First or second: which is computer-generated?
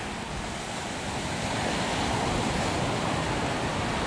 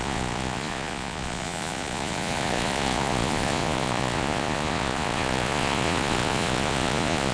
second